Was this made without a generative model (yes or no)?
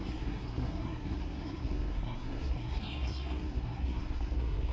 no